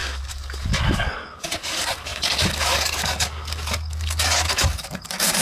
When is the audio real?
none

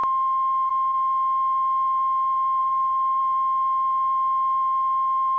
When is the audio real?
0.0-2.6; 3.2-5.4

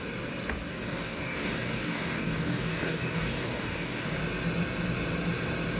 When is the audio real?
0.0-0.7; 4.2-5.8